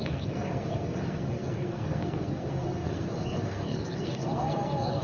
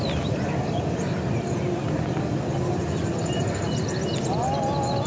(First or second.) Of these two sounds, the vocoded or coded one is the first